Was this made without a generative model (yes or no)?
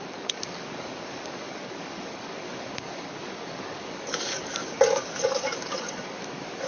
no